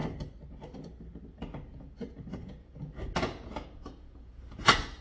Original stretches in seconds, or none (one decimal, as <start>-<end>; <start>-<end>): 0.0-1.7